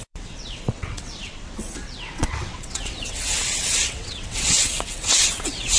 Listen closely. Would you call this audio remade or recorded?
remade